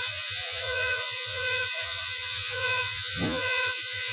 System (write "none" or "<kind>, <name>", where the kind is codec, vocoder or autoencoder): vocoder, Vocos